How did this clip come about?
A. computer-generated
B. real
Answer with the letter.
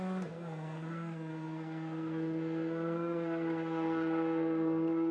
A